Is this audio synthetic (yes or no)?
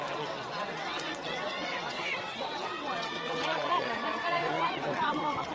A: yes